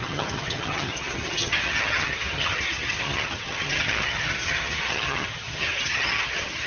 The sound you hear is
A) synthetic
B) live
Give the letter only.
A